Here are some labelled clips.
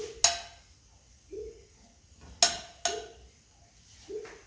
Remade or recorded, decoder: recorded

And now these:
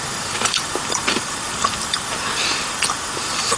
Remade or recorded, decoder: remade, vocoder, BigVGAN v2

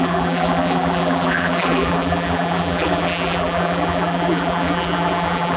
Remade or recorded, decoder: remade, vocoder, BigVGAN v2